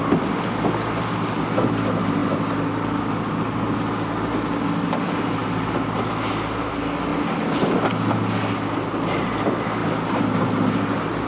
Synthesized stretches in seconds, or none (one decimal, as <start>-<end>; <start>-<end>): none

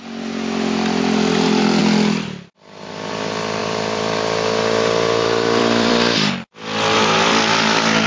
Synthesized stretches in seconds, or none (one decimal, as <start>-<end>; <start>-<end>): 3.6-8.1

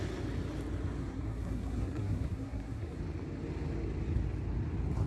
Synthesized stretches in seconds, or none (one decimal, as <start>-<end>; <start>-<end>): 1.0-3.0

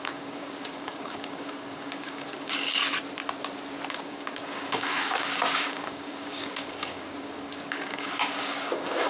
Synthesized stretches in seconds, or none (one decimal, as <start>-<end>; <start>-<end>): 0.0-2.8; 3.9-9.1

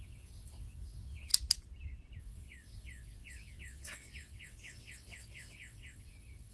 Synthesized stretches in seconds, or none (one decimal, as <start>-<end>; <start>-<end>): 0.0-1.3; 2.2-6.5

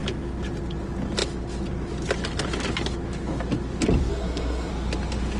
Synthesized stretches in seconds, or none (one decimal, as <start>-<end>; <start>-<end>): 4.1-4.7

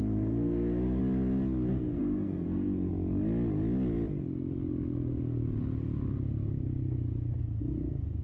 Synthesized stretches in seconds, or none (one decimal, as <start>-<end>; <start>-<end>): 0.0-1.0; 1.7-2.9; 7.4-8.2

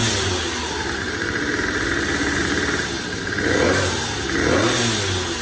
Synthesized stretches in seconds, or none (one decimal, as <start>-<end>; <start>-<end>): 0.0-2.9